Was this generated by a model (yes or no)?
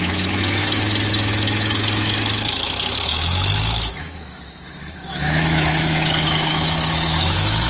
yes